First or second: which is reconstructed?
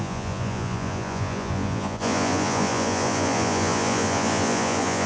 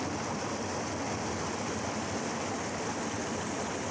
first